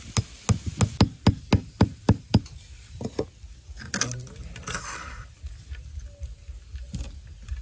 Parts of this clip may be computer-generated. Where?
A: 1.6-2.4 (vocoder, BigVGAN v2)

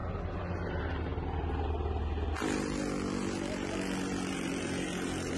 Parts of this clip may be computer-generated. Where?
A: none

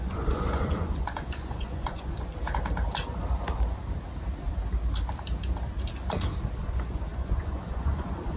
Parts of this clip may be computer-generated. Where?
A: 0.0-2.3 (vocoder, Vocos); 6.6-8.4